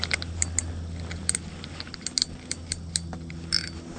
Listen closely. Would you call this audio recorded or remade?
recorded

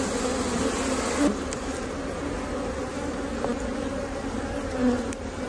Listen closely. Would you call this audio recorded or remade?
recorded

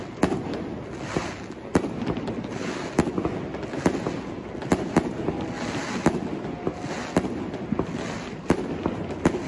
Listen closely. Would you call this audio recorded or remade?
recorded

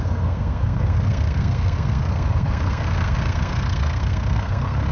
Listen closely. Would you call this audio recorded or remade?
remade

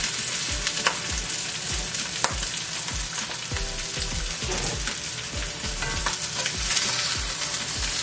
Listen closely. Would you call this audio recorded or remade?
recorded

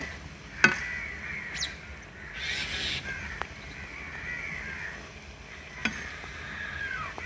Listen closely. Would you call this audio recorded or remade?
recorded